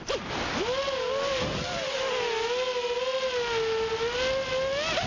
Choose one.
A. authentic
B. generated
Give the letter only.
A